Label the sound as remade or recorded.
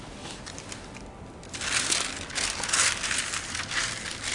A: recorded